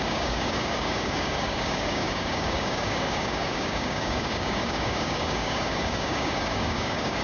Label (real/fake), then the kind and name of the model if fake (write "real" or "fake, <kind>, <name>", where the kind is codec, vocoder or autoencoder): fake, codec, DAC